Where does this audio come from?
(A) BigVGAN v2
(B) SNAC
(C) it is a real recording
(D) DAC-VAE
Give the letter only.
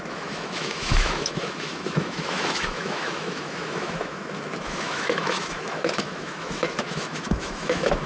D